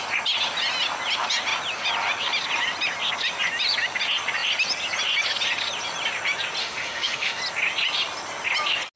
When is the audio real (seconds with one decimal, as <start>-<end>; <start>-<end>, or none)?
0.0-6.6; 7.4-9.0